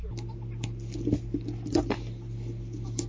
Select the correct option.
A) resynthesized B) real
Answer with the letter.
B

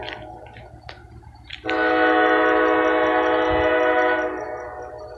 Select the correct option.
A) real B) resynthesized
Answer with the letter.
A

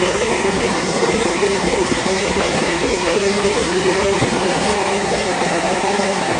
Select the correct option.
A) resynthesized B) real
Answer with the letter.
A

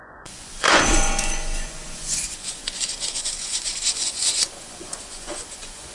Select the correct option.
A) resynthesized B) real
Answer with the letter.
A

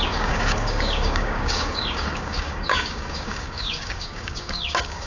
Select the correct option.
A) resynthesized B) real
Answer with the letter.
A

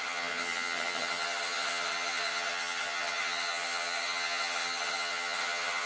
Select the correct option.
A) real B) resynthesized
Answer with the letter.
B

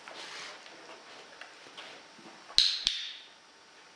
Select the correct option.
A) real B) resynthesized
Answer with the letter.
A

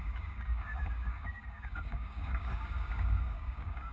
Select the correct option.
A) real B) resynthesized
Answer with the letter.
B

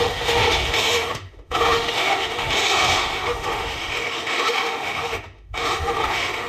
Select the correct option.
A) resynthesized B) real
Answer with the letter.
A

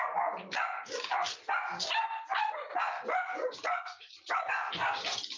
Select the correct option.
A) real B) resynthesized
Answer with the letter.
A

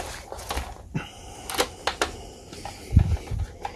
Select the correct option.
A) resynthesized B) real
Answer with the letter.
B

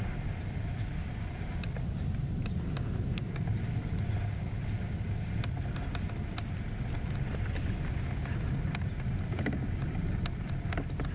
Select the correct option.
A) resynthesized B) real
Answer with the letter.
B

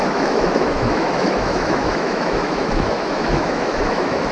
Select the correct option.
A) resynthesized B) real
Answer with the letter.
A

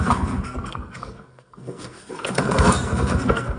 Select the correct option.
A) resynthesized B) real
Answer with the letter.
A